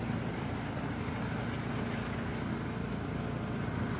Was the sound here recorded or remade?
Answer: recorded